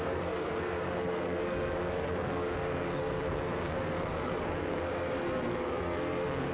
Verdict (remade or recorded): remade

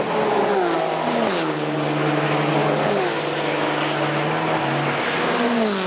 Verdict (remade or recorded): recorded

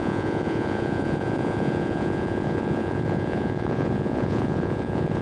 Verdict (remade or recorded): remade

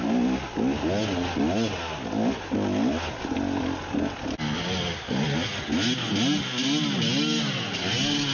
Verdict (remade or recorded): recorded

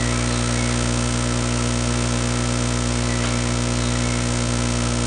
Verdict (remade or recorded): recorded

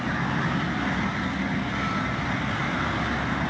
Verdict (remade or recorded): recorded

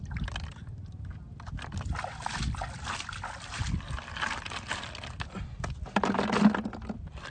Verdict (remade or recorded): recorded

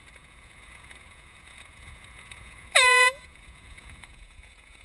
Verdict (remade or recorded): remade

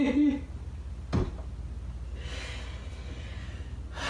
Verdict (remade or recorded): recorded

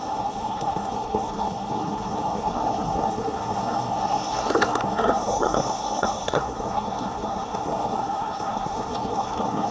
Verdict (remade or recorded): remade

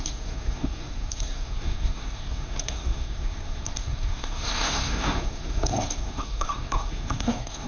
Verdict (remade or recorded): remade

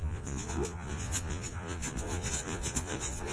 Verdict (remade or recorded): remade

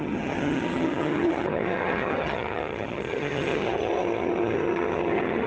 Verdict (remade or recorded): remade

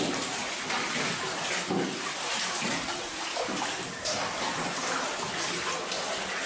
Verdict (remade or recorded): recorded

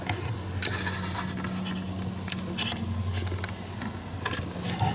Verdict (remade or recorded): recorded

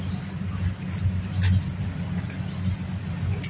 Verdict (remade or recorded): recorded